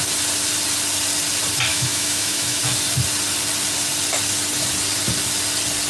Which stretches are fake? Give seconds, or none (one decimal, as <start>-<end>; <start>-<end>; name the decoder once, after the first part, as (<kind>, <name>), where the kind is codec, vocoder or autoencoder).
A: 1.7-2.6 (autoencoder, DAC-VAE)